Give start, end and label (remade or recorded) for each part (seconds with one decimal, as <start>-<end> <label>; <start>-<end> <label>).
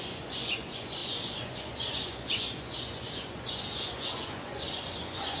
0.0-5.4 remade